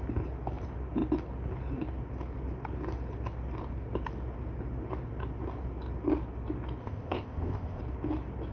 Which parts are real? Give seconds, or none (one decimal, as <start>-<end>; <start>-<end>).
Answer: 0.0-6.8; 7.8-8.5

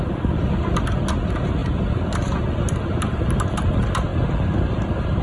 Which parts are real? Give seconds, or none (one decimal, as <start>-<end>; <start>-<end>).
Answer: 0.0-5.2